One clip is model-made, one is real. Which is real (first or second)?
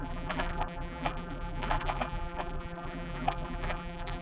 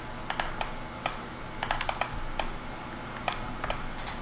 second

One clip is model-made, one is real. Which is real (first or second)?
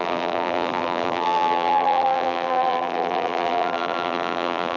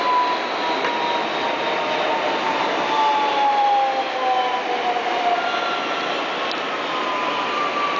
second